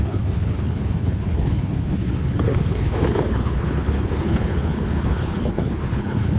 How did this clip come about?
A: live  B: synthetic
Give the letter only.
B